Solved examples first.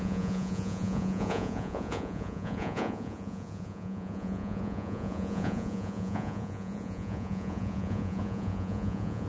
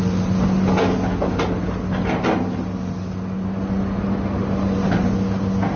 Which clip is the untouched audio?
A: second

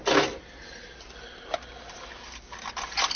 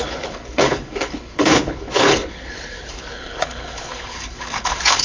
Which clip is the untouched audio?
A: first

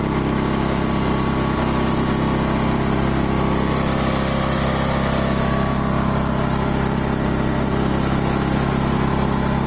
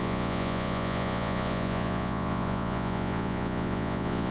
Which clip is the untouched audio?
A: first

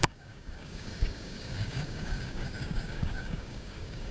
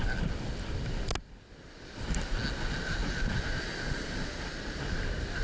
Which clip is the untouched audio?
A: second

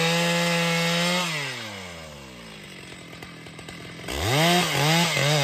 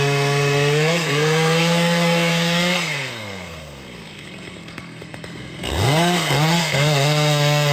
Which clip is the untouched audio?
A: first